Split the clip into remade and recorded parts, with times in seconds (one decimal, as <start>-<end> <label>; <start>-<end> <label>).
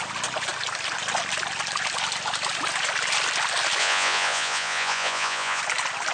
0.0-3.8 recorded; 3.8-5.6 remade; 5.6-6.1 recorded